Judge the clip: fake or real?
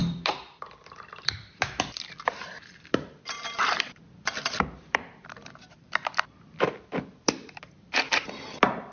fake